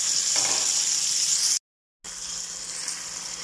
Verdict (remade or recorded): recorded